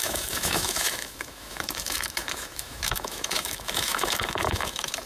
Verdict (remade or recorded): remade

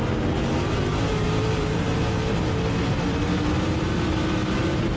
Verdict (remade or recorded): recorded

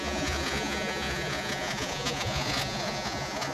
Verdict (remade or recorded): remade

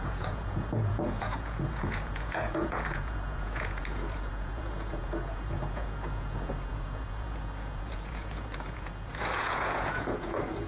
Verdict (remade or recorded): remade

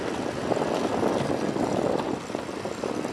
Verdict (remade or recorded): recorded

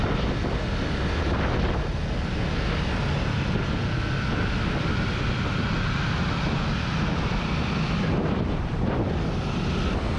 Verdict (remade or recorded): recorded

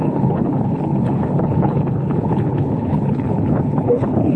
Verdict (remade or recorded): remade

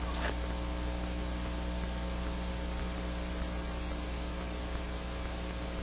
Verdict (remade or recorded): recorded